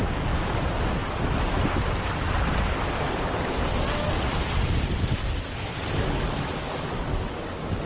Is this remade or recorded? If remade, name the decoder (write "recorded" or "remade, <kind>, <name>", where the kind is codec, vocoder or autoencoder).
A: recorded